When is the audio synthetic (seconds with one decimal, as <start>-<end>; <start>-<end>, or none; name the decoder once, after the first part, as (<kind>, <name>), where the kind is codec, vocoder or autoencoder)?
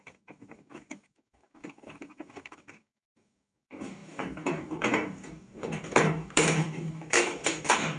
0.0-8.0 (codec, DAC)